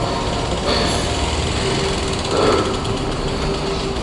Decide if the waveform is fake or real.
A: real